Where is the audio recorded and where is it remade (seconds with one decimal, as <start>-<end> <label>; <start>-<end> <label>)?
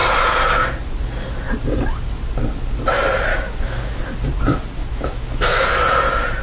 0.0-3.3 recorded; 3.3-4.0 remade; 4.0-4.8 recorded; 4.8-5.7 remade; 5.7-6.4 recorded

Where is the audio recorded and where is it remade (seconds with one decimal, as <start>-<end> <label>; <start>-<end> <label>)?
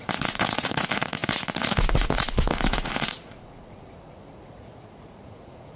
0.0-5.8 remade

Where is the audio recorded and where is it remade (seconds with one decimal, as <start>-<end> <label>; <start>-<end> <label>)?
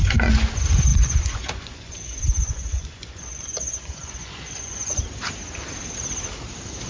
0.0-0.5 remade; 0.5-0.9 recorded; 0.9-4.9 remade; 4.9-6.9 recorded